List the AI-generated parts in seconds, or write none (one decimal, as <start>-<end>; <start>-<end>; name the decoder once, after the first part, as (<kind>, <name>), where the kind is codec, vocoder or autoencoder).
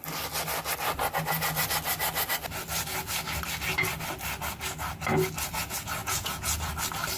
6.0-6.7 (vocoder, Vocos)